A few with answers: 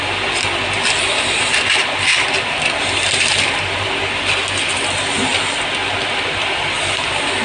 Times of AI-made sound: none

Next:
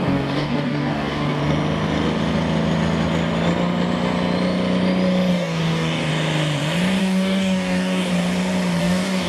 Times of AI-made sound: 0.0-1.4 (codec, DAC); 5.3-6.1; 7.0-8.1; 8.8-9.3

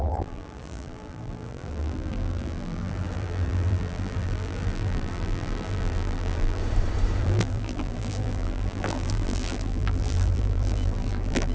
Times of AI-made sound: 0.0-6.6 (vocoder, BigVGAN v2); 7.2-11.5

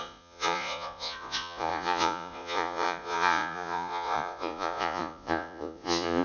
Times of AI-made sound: 0.0-6.2 (vocoder, Vocos)